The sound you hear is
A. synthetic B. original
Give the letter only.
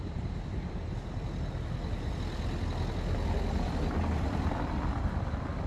B